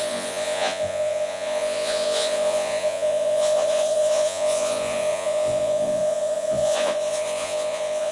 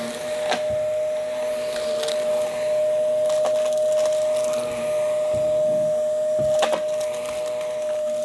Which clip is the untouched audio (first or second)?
second